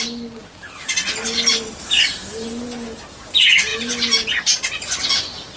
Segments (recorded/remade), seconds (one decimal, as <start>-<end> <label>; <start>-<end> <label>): 0.0-5.6 recorded

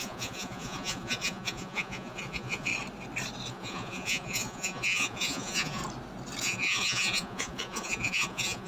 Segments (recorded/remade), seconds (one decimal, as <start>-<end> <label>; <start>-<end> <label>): 0.0-2.7 remade; 2.7-3.5 recorded; 3.5-5.8 remade; 5.8-6.4 recorded; 6.4-8.7 remade

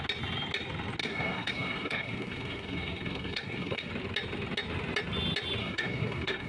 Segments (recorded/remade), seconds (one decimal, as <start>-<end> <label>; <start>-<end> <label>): 0.0-1.0 recorded; 1.0-3.9 remade; 3.9-5.6 recorded; 5.6-6.5 remade

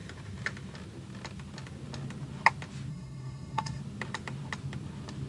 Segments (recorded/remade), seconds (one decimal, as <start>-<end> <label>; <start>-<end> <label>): 0.0-2.9 recorded; 2.9-3.8 remade; 3.8-5.3 recorded

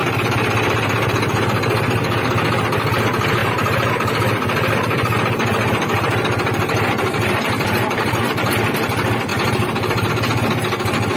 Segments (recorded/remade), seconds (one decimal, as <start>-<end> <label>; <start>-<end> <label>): 0.0-2.3 remade; 2.3-3.4 recorded; 3.4-8.5 remade; 8.5-9.3 recorded; 9.3-10.1 remade; 10.1-11.2 recorded

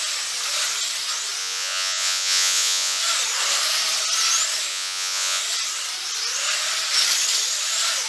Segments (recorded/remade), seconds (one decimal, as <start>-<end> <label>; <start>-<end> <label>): 0.0-1.4 recorded; 1.4-3.0 remade; 3.0-4.7 recorded; 4.7-5.4 remade; 5.4-8.1 recorded

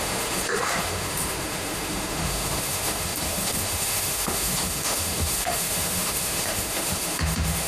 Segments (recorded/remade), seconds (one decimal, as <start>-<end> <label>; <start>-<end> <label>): 0.0-7.7 remade

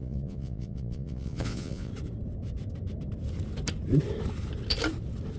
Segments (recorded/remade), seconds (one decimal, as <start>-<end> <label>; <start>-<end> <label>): 0.0-1.9 remade; 1.9-5.4 recorded